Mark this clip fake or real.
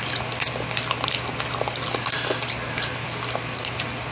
real